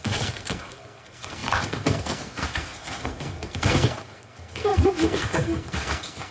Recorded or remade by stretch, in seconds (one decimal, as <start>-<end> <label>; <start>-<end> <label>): 0.0-6.3 remade